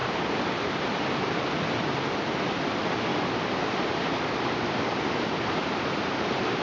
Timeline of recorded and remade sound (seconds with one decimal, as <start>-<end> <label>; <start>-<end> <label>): 0.0-0.8 remade; 0.8-3.1 recorded; 3.1-6.6 remade